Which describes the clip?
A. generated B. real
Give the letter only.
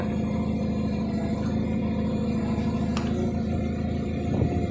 B